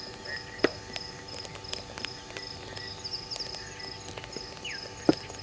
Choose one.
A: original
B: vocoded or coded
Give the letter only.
A